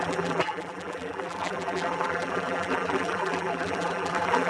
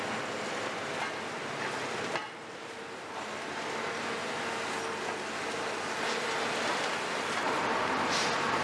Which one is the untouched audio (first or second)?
second